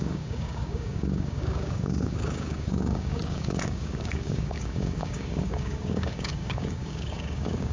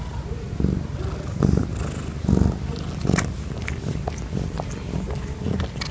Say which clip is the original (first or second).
second